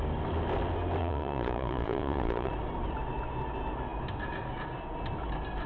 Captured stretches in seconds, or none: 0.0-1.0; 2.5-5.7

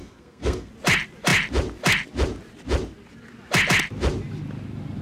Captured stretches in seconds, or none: 0.7-5.0

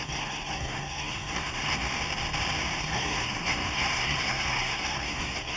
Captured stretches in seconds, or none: 1.9-2.8